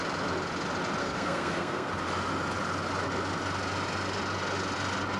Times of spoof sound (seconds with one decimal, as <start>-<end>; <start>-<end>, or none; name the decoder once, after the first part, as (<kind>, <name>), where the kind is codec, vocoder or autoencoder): 1.0-1.9 (codec, SNAC)